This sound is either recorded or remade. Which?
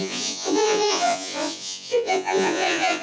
remade